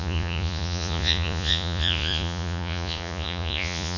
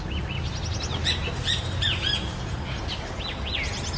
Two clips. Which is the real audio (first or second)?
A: second